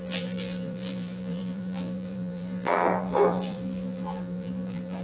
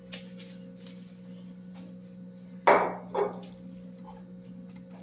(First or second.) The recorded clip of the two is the second